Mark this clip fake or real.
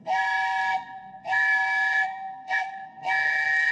fake